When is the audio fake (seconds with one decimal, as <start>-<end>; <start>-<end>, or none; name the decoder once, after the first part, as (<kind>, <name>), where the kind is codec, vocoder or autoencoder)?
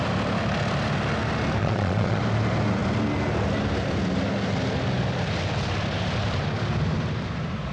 1.6-2.2 (vocoder, Vocos)